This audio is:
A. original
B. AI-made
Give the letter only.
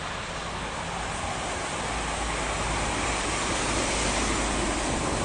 A